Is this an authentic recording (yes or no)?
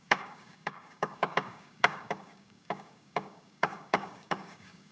no